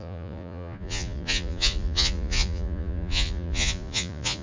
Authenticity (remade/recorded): remade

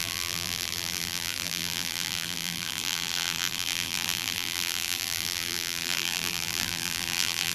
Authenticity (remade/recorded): remade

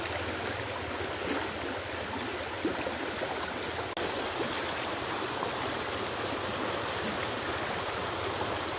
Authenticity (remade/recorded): recorded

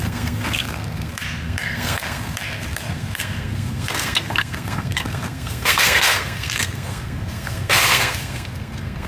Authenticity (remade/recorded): remade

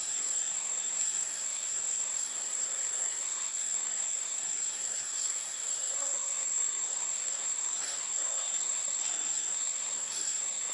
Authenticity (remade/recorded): remade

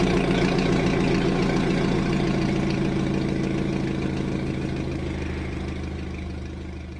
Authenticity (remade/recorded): recorded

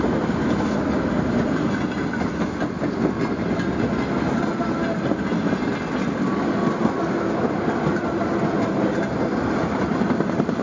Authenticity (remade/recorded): recorded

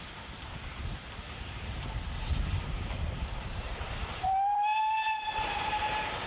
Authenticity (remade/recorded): remade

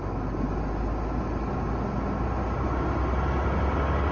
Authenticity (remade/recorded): recorded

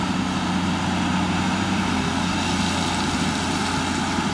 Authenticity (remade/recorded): recorded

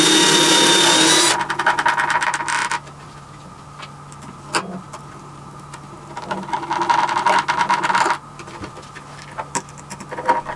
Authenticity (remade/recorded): recorded